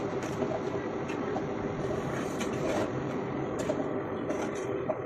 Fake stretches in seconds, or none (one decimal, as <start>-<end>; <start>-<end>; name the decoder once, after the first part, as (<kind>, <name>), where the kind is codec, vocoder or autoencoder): 0.0-3.8 (vocoder, BigVGAN v2); 4.5-5.1